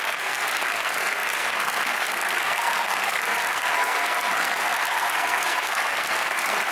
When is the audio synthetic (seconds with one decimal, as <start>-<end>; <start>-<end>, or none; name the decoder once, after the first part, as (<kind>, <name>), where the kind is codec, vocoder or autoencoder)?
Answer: 0.0-6.7 (codec, SNAC)